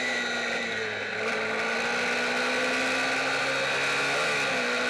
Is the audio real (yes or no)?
yes